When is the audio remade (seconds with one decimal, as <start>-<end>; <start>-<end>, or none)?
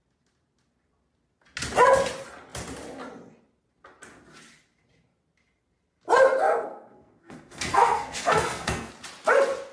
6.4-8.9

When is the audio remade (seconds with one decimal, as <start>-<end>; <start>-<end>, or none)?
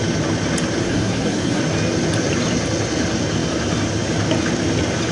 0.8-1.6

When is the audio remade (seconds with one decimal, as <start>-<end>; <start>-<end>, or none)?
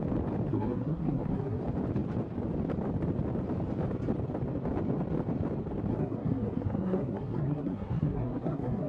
0.5-1.6; 5.9-8.9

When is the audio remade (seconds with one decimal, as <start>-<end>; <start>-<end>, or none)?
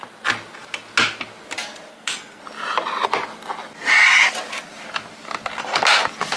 1.9-2.4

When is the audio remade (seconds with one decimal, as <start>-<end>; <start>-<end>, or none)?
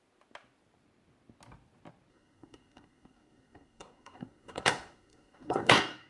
2.1-6.1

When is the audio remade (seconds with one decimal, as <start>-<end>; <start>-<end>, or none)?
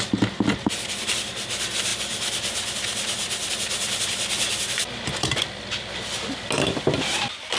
none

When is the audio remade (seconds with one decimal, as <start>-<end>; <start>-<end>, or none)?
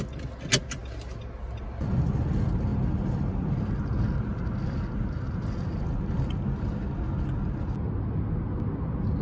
none